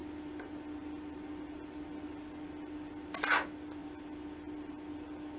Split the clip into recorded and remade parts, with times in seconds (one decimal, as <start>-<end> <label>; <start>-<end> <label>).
0.0-5.4 recorded